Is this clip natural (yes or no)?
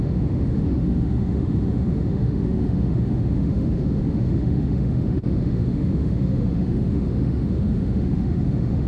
no